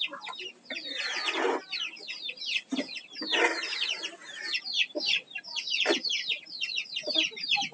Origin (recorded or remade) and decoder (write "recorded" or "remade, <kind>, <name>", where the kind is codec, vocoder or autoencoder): recorded